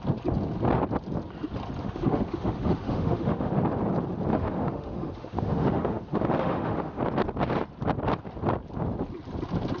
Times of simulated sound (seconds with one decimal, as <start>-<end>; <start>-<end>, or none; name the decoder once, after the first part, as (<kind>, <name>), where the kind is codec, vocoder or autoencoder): 1.8-3.5 (autoencoder, DAC-VAE); 4.3-7.0